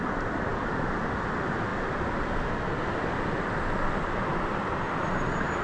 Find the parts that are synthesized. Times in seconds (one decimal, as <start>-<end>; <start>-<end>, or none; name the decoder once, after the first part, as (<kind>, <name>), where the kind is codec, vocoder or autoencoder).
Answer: none